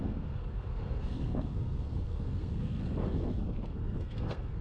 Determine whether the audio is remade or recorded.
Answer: remade